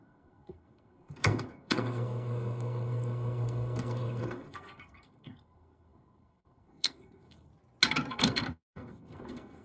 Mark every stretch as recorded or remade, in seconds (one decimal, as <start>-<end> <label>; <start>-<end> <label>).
0.0-7.5 remade; 7.5-8.1 recorded; 8.1-9.6 remade